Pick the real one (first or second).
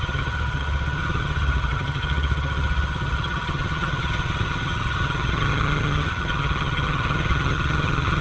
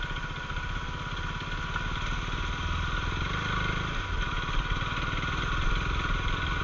second